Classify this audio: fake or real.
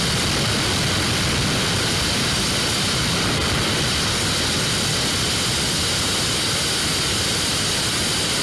real